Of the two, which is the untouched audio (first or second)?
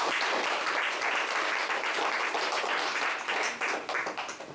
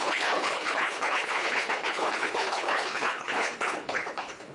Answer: first